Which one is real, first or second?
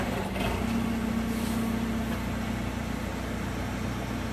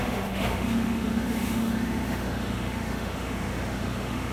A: first